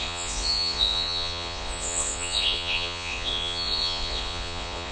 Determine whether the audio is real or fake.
fake